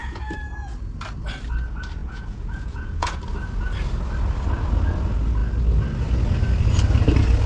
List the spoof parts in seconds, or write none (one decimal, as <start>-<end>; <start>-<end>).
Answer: 0.0-0.7; 2.0-3.3